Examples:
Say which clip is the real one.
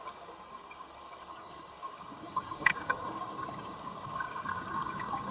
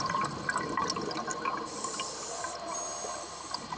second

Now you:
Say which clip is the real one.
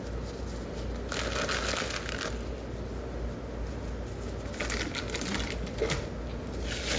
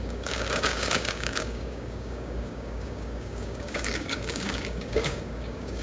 first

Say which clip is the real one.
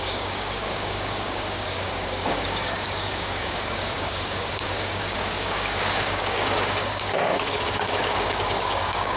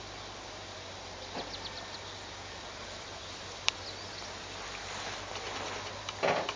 second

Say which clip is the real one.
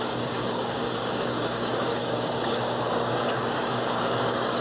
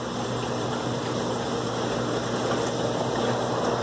second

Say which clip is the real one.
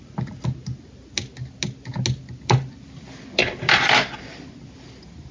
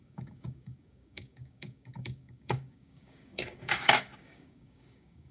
first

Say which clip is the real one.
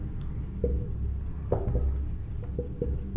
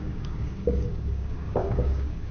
first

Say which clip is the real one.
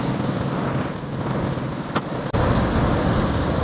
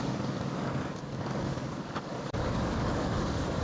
first